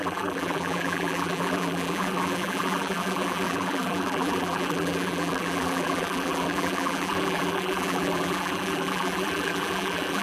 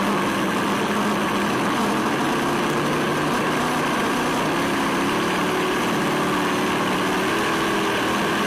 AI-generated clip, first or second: first